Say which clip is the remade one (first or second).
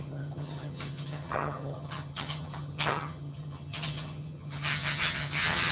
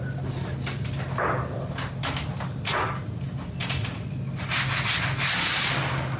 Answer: first